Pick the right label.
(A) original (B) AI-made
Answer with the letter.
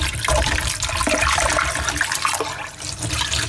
A